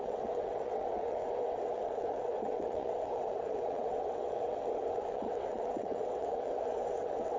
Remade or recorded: remade